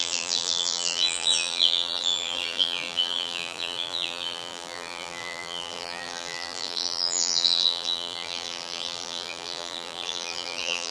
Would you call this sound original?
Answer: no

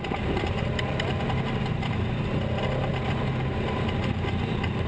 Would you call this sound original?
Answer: no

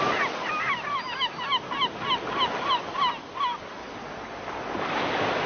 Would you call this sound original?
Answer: yes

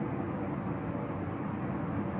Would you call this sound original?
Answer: yes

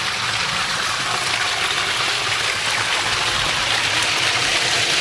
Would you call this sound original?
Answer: yes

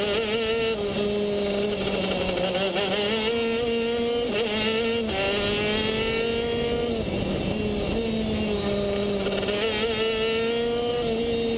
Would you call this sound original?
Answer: yes